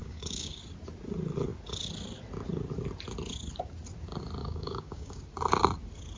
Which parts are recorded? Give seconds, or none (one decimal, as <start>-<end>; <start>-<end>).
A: 0.6-4.4; 5.2-6.2